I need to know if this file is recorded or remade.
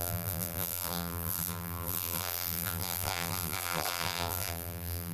remade